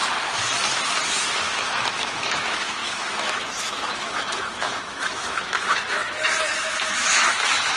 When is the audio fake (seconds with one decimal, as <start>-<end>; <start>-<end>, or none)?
1.2-7.8